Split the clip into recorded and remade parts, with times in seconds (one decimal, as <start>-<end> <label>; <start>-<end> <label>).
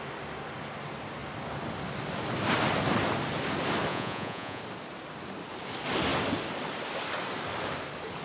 0.0-3.9 recorded; 3.9-4.6 remade; 4.6-8.2 recorded